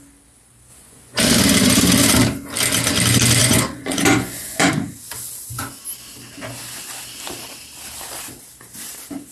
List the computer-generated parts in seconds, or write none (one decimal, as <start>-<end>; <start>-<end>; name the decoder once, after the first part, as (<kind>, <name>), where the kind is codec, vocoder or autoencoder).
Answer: 0.7-1.2 (vocoder, Vocos); 3.4-4.7